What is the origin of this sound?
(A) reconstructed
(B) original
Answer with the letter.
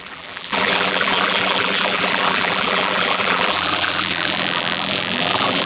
A